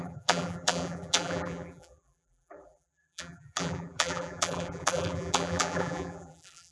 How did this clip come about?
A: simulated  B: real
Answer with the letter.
A